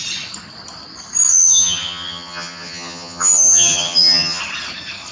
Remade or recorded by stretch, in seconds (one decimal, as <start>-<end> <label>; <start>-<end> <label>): 0.0-1.3 recorded; 1.3-4.4 remade; 4.4-5.1 recorded